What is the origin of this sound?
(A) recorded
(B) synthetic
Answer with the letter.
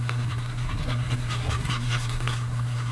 B